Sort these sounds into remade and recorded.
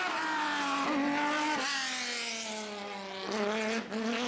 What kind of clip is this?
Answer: recorded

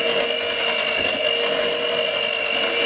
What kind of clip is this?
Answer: recorded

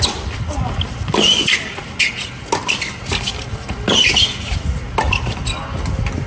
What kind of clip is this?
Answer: recorded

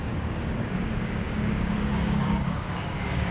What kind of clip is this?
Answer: remade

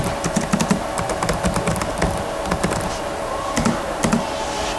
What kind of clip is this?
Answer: recorded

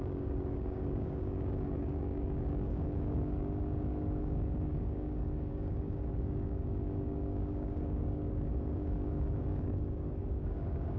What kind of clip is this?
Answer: remade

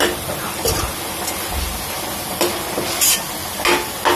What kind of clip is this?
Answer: recorded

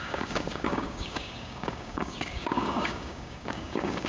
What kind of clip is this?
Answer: remade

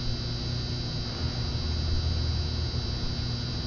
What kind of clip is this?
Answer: recorded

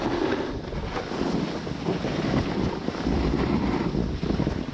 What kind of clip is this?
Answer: recorded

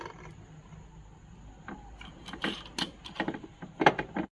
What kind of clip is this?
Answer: recorded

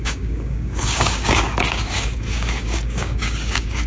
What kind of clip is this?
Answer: remade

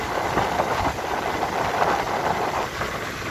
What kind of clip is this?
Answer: recorded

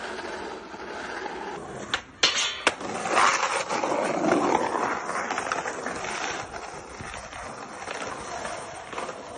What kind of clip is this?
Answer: recorded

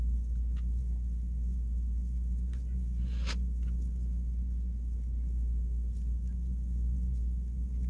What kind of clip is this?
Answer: recorded